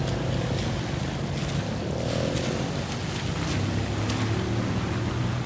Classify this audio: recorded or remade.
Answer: recorded